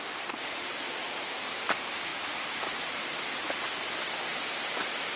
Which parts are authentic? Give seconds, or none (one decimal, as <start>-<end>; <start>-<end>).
0.0-5.2